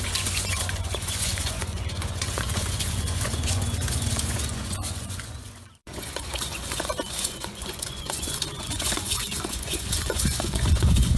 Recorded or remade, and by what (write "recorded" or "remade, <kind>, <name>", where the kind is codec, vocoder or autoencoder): remade, vocoder, Vocos